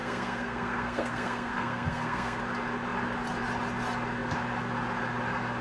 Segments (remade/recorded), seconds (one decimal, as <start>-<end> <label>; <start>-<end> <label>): 0.0-2.4 remade; 2.4-5.6 recorded